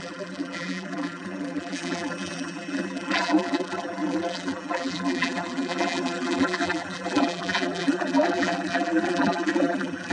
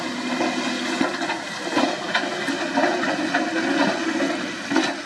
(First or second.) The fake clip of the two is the first